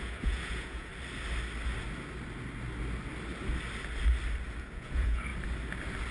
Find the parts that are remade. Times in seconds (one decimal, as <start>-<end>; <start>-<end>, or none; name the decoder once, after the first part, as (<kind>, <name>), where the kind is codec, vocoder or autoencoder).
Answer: 0.0-0.9 (vocoder, Vocos); 4.6-5.3

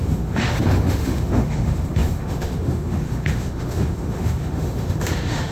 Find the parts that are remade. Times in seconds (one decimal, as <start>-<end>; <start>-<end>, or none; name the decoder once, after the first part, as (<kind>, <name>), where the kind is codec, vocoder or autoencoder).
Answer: 0.0-5.5 (autoencoder, DAC-VAE)

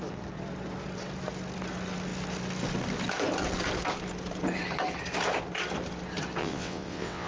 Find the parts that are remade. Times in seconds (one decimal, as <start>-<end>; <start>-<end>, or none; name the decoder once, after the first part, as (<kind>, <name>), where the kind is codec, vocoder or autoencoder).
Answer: 6.4-7.3 (vocoder, WaveNeXt)

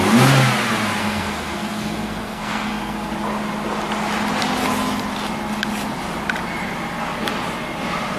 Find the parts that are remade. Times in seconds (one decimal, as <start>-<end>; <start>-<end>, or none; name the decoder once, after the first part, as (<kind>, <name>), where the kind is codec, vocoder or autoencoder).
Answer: 1.0-3.1 (codec, SNAC)

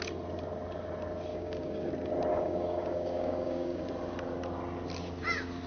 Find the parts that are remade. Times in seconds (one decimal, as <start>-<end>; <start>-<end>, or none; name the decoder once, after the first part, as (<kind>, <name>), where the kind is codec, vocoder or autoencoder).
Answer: 1.3-1.9 (codec, DAC); 2.3-3.8

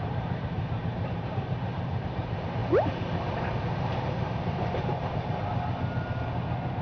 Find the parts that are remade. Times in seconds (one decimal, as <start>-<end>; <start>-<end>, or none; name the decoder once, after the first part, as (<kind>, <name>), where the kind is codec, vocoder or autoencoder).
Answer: 0.0-2.6 (vocoder, BigVGAN v2)